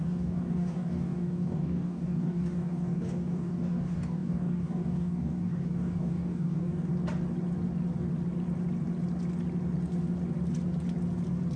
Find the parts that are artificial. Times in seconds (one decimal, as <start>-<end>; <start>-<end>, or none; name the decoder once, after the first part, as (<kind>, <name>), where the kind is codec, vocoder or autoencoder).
0.0-6.9 (codec, DAC)